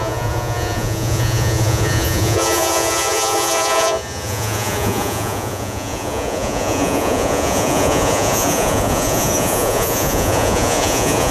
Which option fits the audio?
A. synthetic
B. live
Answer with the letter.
A